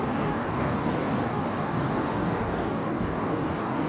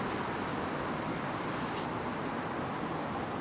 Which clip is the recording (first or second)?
second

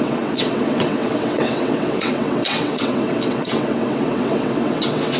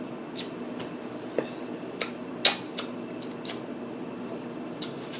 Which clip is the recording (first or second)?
second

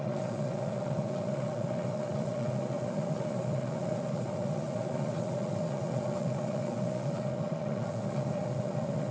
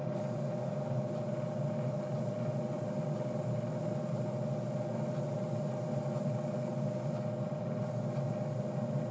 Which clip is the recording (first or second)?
second